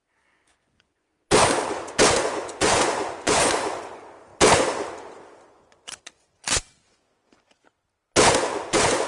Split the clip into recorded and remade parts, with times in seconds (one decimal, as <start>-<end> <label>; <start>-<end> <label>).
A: 0.0-1.1 remade; 1.1-2.1 recorded; 2.1-4.3 remade; 4.3-5.5 recorded; 5.5-7.5 remade; 7.5-8.6 recorded; 8.6-9.1 remade